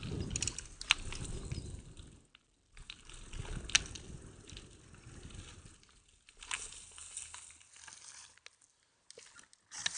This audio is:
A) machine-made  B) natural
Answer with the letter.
B